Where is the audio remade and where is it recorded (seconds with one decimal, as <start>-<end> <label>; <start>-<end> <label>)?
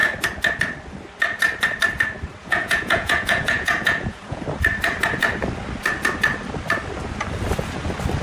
0.0-2.4 recorded; 2.4-4.4 remade; 4.4-8.2 recorded